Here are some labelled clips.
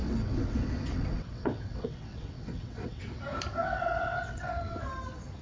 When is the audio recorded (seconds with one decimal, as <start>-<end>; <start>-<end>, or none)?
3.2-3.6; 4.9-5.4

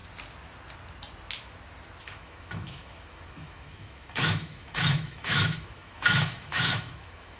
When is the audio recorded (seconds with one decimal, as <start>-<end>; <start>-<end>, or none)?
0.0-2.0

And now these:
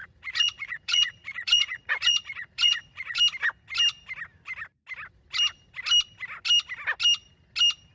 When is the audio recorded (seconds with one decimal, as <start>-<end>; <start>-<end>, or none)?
3.2-7.9

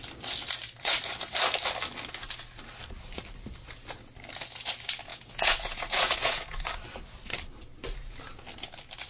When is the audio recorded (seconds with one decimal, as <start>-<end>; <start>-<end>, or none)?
0.0-5.1; 6.6-9.1

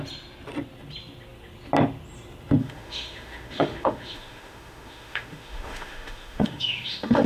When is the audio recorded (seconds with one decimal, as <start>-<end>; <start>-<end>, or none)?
0.0-2.6

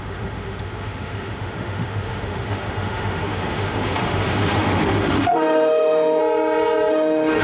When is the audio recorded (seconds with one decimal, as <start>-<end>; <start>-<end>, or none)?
6.2-6.9

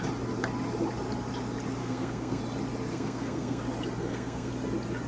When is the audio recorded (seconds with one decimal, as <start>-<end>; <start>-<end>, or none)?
0.0-1.8; 2.4-2.9; 3.6-4.0; 4.5-5.1

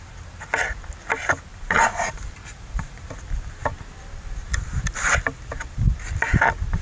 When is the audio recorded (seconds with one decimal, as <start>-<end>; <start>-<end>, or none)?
0.0-1.5; 3.0-6.8